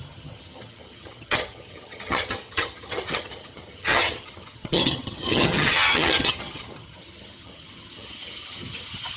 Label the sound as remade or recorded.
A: remade